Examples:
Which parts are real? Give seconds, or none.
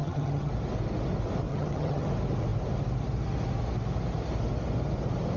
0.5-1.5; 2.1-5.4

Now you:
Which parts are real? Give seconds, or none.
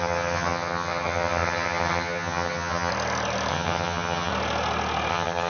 2.9-3.5; 4.3-5.1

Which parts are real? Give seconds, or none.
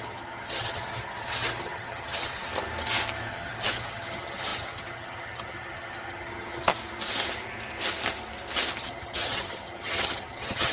2.5-3.3; 6.7-8.8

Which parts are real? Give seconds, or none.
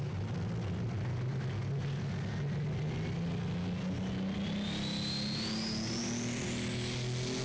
0.0-7.4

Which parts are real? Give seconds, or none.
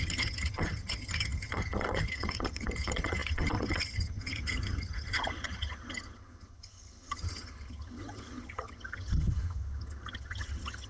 none